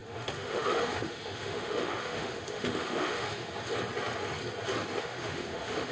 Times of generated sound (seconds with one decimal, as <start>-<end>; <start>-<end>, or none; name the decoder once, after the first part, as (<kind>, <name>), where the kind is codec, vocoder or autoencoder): 0.0-3.5 (autoencoder, DAC-VAE); 5.0-5.9